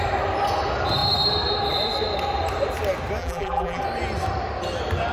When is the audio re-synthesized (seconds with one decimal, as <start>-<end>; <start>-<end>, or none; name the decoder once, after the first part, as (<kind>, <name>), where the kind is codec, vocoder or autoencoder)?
3.2-3.8 (vocoder, BigVGAN v2)